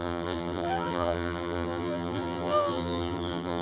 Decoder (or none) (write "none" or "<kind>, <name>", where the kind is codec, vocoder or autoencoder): vocoder, BigVGAN v2